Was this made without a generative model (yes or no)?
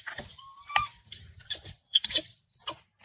no